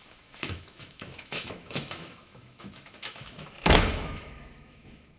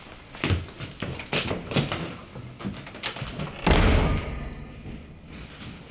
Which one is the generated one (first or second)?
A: first